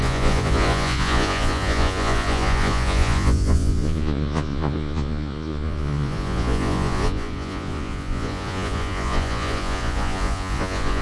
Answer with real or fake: fake